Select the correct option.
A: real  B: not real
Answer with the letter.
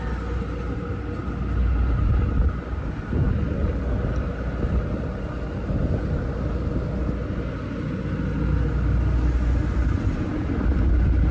A